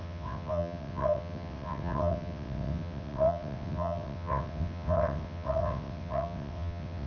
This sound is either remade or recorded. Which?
remade